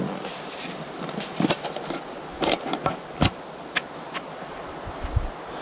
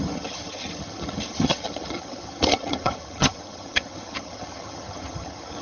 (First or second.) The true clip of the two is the first